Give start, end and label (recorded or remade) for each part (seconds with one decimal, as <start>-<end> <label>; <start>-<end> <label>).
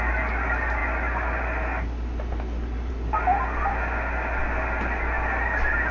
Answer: 0.0-5.9 recorded